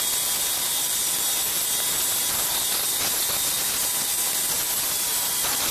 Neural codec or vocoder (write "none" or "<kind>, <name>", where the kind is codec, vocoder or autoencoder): none